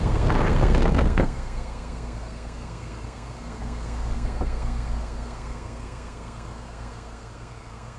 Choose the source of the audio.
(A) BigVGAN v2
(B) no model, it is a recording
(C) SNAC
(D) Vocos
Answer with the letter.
C